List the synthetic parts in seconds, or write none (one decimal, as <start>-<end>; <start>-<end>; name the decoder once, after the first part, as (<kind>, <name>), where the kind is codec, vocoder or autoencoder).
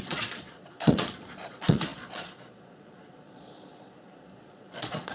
0.0-5.1 (vocoder, Vocos)